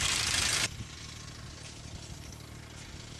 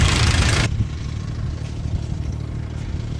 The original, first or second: first